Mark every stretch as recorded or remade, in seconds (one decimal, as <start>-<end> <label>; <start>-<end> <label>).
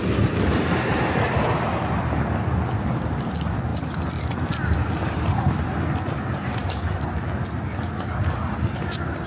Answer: 0.0-9.3 recorded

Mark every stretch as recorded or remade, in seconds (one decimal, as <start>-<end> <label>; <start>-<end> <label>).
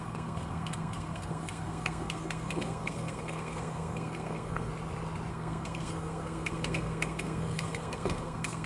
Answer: 0.0-4.7 remade; 4.7-5.3 recorded; 5.3-8.7 remade